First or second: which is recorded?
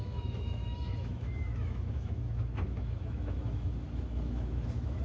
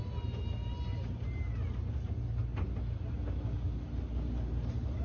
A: second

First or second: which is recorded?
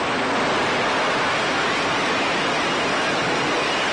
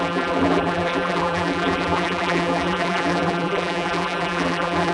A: first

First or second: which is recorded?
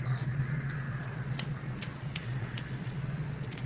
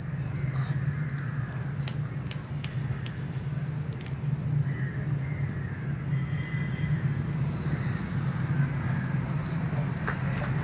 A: second